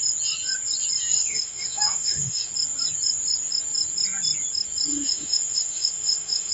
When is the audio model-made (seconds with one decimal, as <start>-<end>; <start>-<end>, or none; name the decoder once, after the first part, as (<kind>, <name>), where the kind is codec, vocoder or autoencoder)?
1.0-2.5 (autoencoder, DAC-VAE); 4.9-6.5